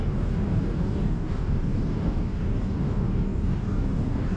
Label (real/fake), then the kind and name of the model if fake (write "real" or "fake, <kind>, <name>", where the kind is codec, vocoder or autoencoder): fake, codec, DAC